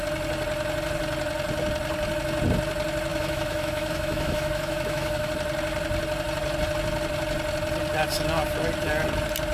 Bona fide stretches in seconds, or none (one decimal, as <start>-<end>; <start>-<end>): 0.0-3.1; 5.3-9.5